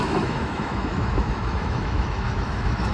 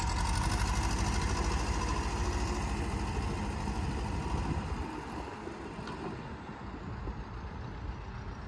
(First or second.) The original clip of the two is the second